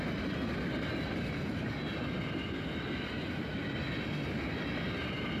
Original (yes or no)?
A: yes